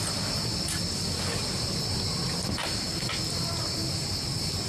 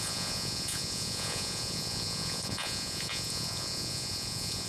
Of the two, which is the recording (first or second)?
first